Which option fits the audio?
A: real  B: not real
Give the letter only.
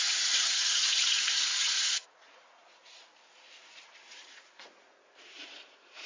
B